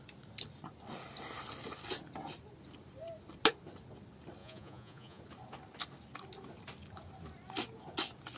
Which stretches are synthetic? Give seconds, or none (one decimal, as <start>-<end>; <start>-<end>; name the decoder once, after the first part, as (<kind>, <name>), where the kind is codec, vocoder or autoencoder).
4.4-5.2 (vocoder, Vocos)